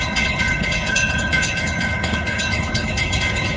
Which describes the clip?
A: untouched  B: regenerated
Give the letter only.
B